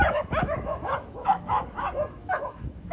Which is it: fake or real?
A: fake